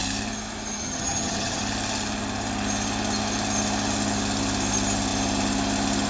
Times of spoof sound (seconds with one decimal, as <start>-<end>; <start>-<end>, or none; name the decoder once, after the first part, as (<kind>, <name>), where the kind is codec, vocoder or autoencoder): 0.8-1.6 (vocoder, HiFi-GAN)